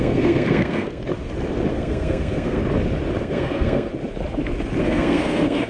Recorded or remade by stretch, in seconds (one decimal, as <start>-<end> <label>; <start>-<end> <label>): 0.0-1.0 remade; 1.0-1.7 recorded; 1.7-2.6 remade; 2.6-3.2 recorded; 3.2-3.9 remade; 3.9-4.8 recorded; 4.8-5.7 remade